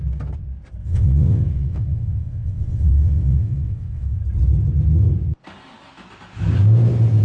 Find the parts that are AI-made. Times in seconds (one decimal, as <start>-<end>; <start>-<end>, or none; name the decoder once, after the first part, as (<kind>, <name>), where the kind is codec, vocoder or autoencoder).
0.8-4.2 (vocoder, WaveNeXt)